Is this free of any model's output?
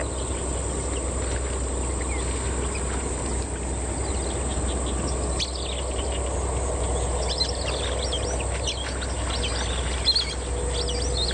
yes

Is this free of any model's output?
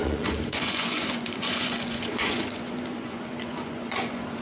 no